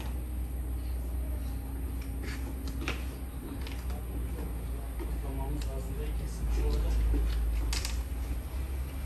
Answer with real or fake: real